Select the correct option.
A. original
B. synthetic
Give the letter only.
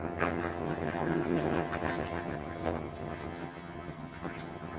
B